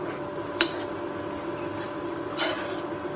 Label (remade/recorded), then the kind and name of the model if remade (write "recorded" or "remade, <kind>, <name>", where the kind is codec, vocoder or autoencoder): recorded